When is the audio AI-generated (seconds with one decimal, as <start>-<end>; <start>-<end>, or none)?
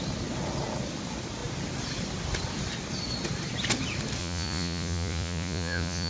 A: 4.2-6.1